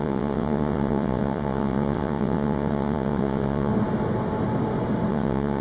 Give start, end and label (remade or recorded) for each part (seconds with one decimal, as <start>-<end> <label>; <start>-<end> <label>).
0.0-3.7 remade; 3.7-5.1 recorded; 5.1-5.6 remade